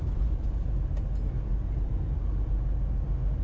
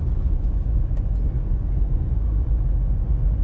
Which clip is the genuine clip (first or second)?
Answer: first